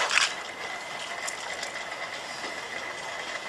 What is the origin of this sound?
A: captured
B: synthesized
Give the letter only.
A